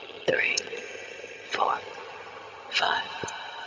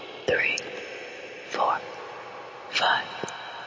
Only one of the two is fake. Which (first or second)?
first